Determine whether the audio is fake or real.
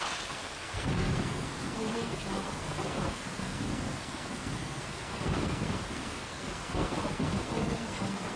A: fake